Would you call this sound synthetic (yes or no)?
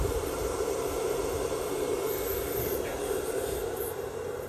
yes